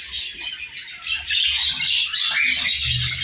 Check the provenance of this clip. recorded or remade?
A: recorded